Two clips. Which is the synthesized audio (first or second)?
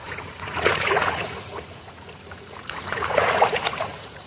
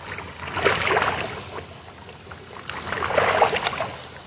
first